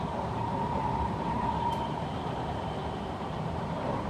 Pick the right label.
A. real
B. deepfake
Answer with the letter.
B